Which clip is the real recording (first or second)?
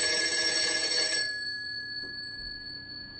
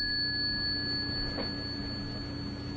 second